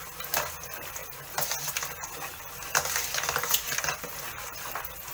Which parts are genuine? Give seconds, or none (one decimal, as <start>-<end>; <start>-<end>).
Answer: 0.0-5.1